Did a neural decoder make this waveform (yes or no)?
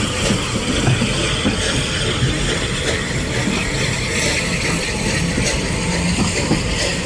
no